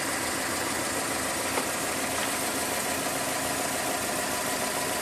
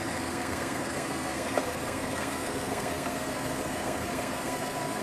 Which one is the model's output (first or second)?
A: second